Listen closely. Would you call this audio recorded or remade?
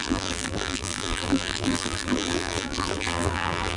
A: remade